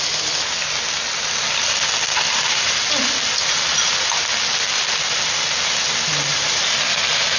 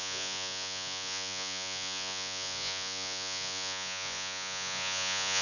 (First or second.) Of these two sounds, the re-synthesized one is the second